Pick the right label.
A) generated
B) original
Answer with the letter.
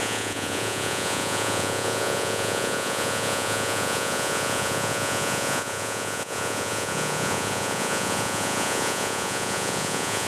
A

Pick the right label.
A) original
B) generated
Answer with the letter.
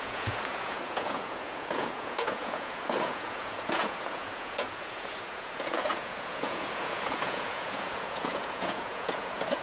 B